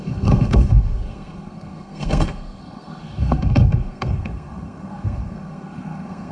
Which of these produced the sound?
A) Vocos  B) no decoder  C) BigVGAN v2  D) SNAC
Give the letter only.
D